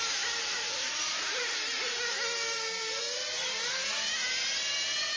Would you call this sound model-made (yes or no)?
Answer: no